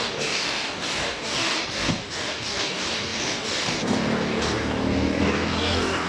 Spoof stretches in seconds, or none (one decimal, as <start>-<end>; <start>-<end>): 0.0-6.1